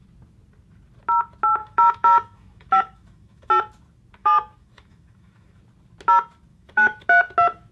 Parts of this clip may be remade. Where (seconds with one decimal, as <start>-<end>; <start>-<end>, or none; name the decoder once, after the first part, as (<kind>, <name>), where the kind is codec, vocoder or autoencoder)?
1.6-3.5 (autoencoder, DAC-VAE); 4.2-5.6; 6.5-7.0